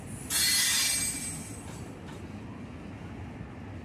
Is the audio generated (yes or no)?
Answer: no